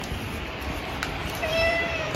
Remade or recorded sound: remade